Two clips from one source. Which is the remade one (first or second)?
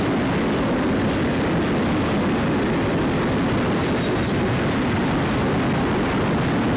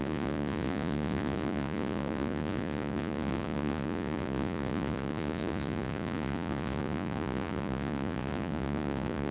second